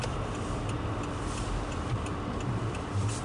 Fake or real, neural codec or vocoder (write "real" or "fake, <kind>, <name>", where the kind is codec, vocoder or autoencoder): real